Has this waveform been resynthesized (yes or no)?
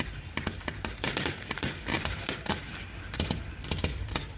yes